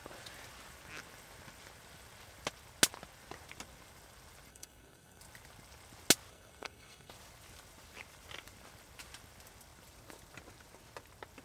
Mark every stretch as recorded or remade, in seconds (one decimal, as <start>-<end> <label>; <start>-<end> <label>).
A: 0.0-4.5 recorded; 4.5-5.2 remade; 5.2-6.3 recorded; 6.3-7.1 remade; 7.1-11.4 recorded